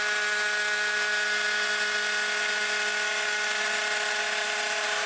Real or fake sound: real